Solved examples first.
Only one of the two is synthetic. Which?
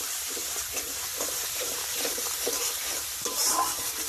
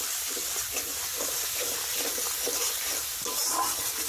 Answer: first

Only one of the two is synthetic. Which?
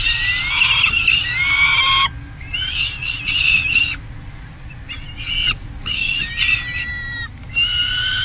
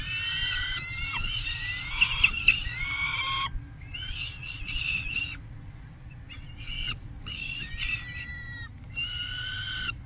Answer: second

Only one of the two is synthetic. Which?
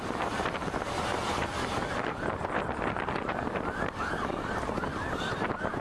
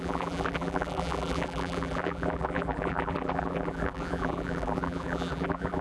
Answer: second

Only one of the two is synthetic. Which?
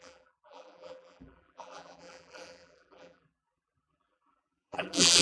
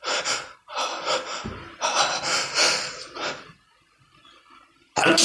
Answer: first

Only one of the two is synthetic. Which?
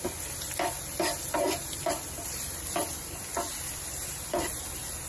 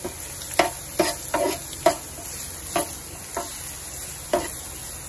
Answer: first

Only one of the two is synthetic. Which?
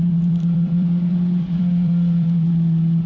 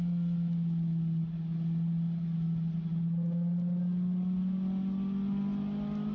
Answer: first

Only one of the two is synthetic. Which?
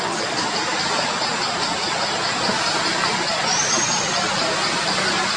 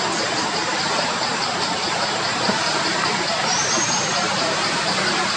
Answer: second